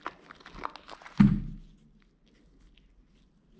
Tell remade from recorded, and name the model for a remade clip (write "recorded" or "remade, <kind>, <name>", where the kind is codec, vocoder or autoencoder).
recorded